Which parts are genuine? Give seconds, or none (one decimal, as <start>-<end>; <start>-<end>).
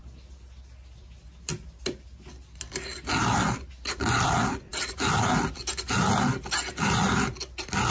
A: 0.0-7.9